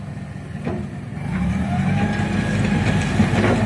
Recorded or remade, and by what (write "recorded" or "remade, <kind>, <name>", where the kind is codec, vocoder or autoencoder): recorded